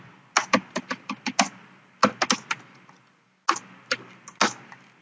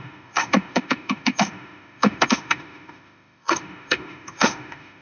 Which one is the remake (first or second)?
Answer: second